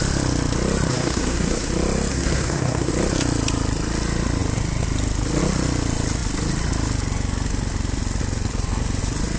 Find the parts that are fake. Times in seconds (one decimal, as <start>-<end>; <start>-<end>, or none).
0.9-1.7; 2.1-2.9